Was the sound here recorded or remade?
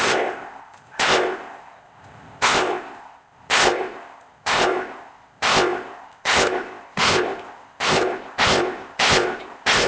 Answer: remade